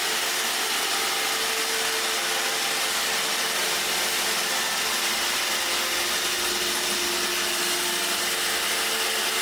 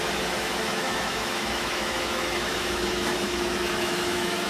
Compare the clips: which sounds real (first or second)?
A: first